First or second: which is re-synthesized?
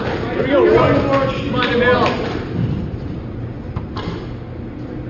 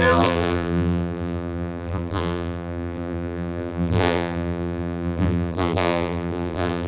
second